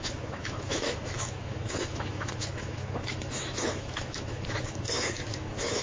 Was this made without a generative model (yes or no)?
no